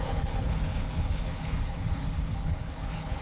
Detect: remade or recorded remade